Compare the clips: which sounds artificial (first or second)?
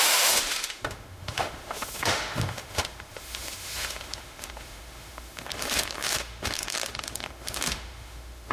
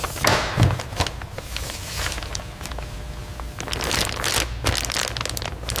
first